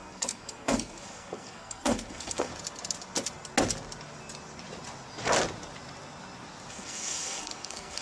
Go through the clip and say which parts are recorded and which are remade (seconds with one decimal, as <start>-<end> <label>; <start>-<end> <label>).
0.0-2.5 remade; 2.5-6.7 recorded; 6.7-8.0 remade